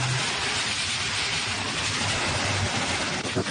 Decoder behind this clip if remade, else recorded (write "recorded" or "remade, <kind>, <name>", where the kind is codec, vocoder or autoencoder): recorded